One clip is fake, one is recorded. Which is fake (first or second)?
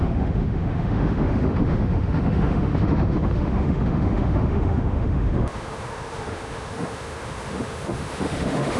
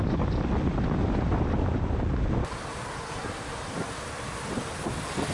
first